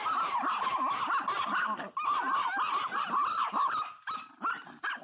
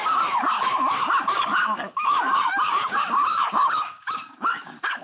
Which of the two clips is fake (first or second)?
second